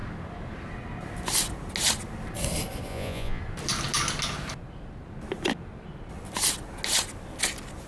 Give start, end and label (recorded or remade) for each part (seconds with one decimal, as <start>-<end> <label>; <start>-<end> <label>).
0.0-2.9 recorded; 2.9-3.4 remade; 3.4-7.9 recorded